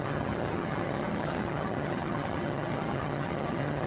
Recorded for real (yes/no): no